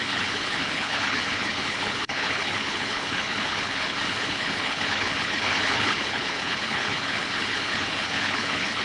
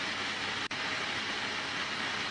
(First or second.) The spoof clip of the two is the first